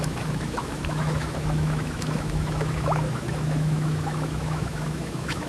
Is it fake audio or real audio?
fake